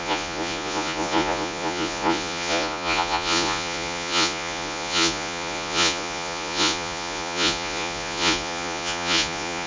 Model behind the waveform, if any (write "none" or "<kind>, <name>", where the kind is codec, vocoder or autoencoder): vocoder, Vocos